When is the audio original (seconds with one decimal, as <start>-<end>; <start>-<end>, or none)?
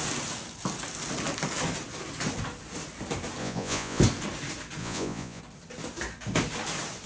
0.0-3.4; 4.0-4.8; 5.4-7.1